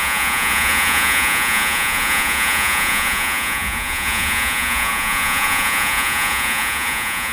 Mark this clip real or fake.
fake